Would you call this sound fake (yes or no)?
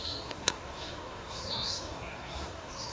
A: yes